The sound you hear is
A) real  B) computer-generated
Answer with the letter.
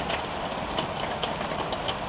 A